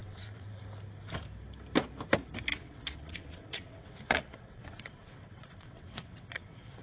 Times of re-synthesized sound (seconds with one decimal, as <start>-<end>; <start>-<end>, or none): 0.0-0.6; 2.5-6.8